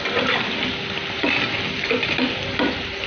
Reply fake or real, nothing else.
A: real